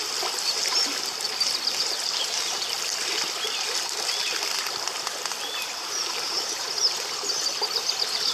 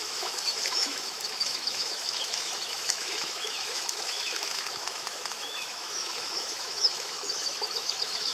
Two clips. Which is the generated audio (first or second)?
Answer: second